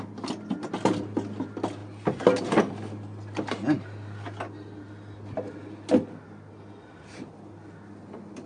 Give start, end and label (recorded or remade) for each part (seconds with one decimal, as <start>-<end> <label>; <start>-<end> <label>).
0.0-8.5 recorded